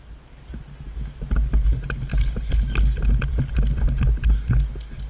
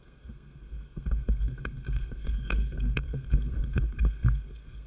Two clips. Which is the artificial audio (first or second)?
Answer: second